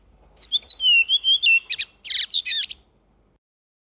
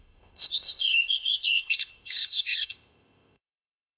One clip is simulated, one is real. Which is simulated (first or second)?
second